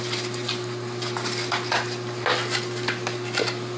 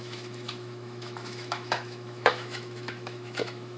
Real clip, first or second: first